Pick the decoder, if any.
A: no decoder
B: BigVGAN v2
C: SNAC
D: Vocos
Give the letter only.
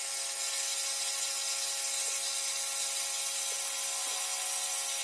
A